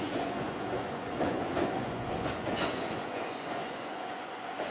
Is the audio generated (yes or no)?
yes